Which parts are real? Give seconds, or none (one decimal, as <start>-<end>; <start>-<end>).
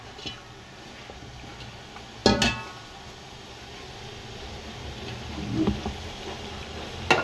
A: 0.0-7.2